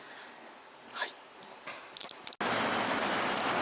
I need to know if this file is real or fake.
real